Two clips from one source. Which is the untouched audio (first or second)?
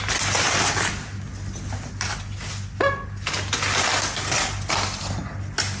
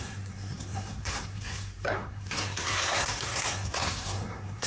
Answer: first